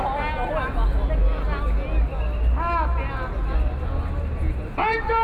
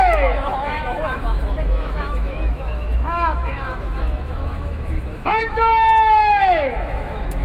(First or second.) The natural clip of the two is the first